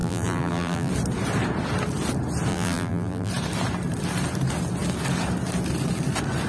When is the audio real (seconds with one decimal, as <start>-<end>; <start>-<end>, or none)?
0.9-2.5; 3.3-6.5